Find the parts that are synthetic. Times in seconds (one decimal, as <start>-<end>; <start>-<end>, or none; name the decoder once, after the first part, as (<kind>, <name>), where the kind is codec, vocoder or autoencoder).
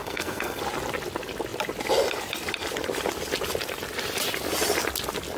0.0-0.6 (codec, SNAC)